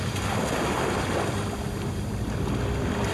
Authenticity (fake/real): real